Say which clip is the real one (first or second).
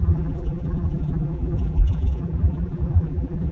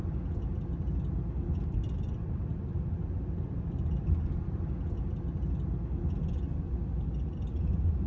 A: second